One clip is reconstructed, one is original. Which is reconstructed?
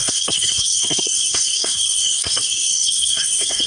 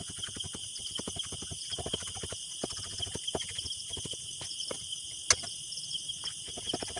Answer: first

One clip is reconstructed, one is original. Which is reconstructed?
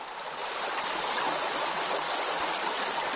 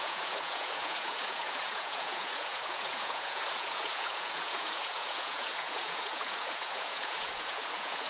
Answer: second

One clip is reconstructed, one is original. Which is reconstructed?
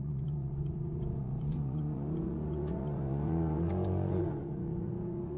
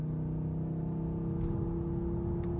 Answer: first